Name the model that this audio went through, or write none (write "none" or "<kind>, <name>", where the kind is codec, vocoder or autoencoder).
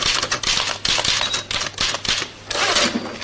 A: none